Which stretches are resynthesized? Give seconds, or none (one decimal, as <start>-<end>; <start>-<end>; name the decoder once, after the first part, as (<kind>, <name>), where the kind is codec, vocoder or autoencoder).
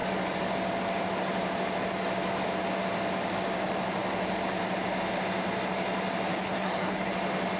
6.3-7.1 (codec, HILCodec)